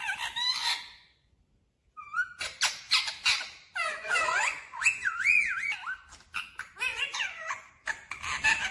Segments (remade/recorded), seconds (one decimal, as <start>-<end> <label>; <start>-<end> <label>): 0.0-0.6 recorded; 0.6-1.4 remade; 1.4-3.8 recorded; 3.8-5.5 remade; 5.5-6.9 recorded; 6.9-7.7 remade; 7.7-8.7 recorded